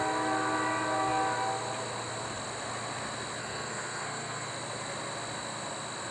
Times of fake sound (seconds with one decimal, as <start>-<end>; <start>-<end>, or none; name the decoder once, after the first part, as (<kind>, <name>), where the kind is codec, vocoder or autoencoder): 3.4-4.5 (codec, SNAC)